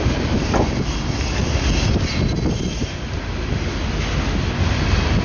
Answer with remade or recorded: recorded